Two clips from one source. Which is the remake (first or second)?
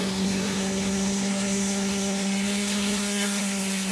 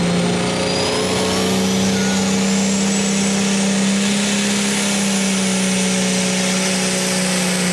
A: first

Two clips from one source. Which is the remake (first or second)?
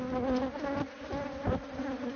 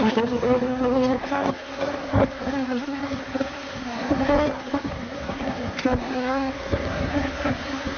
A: second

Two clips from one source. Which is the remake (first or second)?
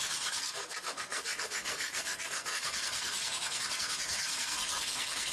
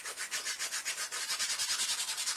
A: first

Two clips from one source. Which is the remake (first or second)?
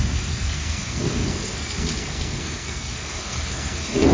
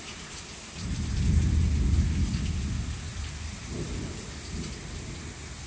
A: first